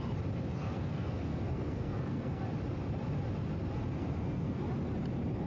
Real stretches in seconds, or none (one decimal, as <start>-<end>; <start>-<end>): 0.0-0.5; 2.4-4.0; 4.6-5.5